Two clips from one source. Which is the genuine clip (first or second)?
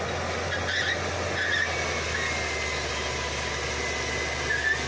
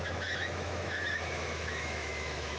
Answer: first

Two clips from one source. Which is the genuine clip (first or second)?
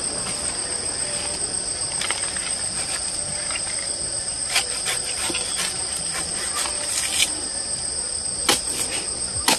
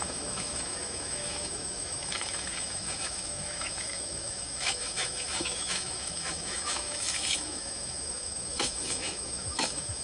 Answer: first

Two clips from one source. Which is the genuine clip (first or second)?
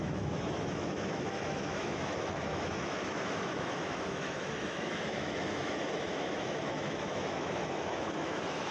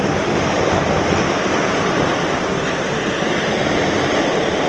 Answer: second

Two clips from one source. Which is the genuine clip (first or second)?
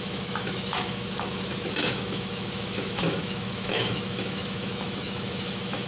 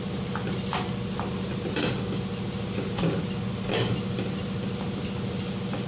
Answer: second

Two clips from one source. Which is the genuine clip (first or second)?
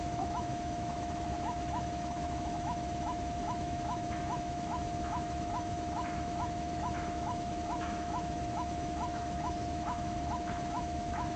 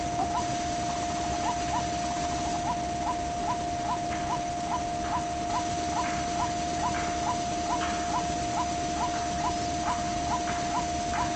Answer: second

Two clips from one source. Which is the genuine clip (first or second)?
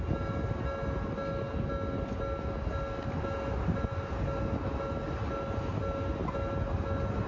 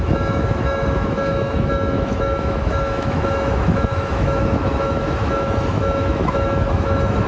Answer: first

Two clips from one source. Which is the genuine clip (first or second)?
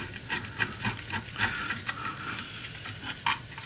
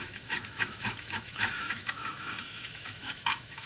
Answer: first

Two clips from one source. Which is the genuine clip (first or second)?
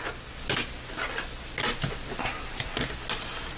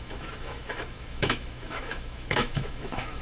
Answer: first